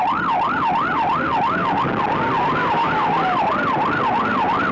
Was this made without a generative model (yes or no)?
yes